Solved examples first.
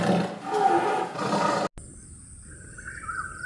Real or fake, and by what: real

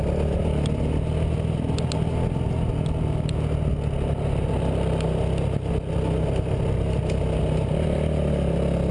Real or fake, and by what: real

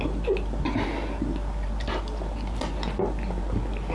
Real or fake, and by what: real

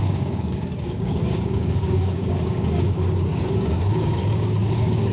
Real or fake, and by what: fake, codec, DAC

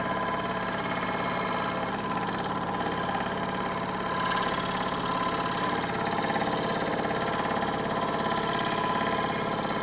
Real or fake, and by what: real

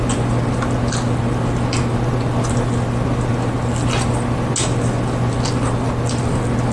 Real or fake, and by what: real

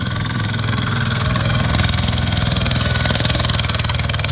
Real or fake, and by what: fake, codec, SNAC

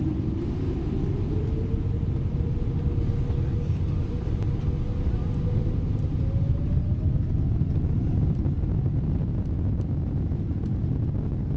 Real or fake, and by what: real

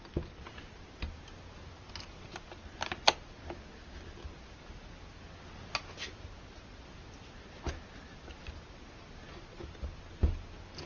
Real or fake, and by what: real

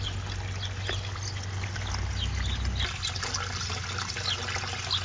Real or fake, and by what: real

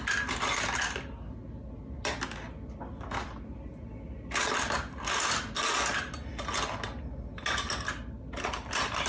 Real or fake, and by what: real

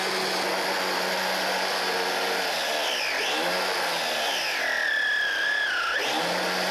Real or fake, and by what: real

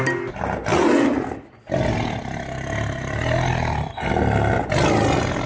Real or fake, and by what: real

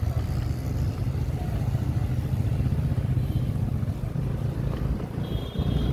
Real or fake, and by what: real